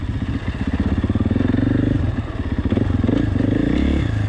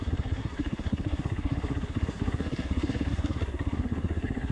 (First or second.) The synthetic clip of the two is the second